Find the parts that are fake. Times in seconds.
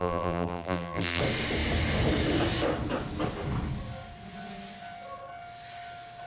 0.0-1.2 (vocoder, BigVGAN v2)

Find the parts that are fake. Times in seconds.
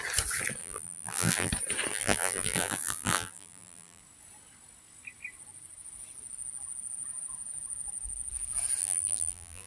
0.6-1.5 (vocoder, BigVGAN v2); 1.9-4.0; 8.8-9.7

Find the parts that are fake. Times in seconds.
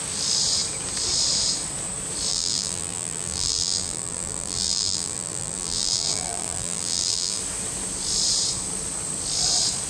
2.3-7.4 (vocoder, BigVGAN v2)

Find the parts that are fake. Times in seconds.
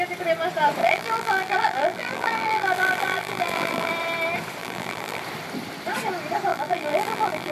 0.8-3.9 (vocoder, BigVGAN v2); 4.6-5.2; 6.5-7.5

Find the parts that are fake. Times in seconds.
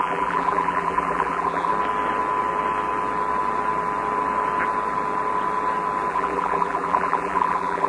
0.0-1.7 (vocoder, BigVGAN v2); 6.1-7.9